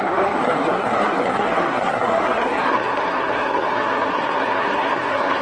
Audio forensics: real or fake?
fake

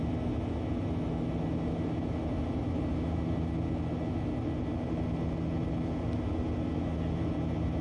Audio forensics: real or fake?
real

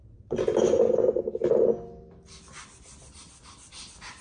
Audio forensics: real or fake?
real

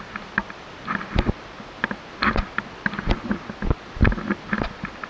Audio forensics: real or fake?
real